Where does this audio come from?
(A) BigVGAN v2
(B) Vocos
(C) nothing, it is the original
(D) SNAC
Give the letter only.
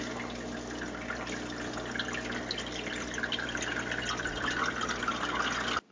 C